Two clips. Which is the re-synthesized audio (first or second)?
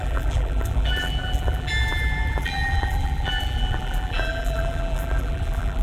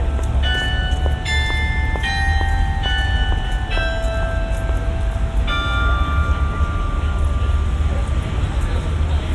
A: first